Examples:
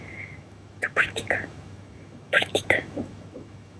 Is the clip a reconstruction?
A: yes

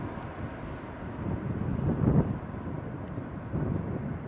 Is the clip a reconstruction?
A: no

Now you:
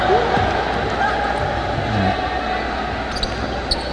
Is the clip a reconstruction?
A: no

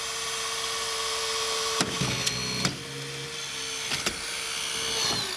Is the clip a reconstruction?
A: no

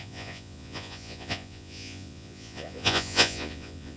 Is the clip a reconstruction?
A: yes